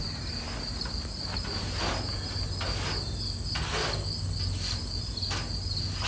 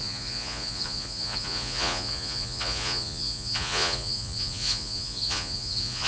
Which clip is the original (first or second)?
first